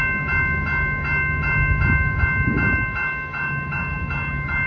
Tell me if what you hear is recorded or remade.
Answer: recorded